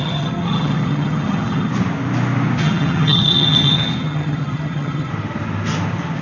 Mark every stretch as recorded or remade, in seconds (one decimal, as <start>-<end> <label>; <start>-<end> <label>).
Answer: 0.0-1.7 remade; 1.7-2.6 recorded; 2.6-5.1 remade; 5.1-6.2 recorded